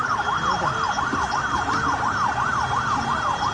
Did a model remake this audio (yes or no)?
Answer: no